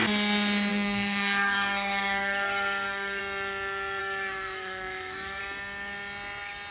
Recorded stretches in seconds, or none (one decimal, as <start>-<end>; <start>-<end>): 0.0-0.7; 3.2-4.0; 5.4-6.7